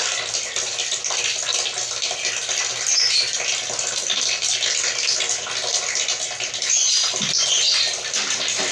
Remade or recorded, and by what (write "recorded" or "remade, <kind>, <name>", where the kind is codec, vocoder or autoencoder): recorded